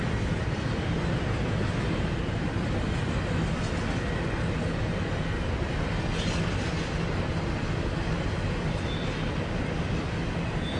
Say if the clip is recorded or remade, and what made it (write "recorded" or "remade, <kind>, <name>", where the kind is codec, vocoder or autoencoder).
recorded